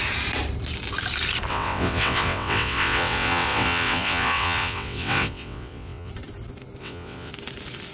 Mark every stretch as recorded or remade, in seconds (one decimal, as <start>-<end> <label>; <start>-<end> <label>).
0.0-1.5 recorded; 1.5-6.1 remade; 6.1-6.8 recorded; 6.8-7.3 remade; 7.3-7.9 recorded